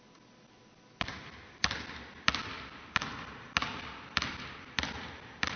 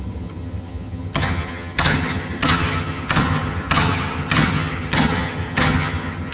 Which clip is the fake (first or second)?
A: second